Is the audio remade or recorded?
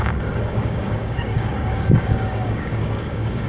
remade